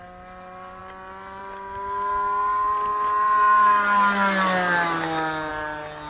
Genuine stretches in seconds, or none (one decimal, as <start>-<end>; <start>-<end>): 0.0-6.1